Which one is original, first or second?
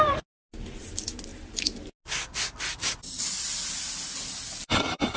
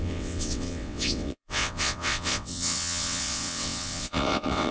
first